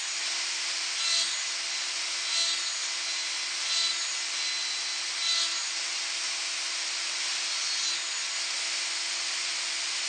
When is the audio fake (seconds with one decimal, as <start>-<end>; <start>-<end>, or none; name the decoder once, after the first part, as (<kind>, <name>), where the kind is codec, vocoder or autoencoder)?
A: none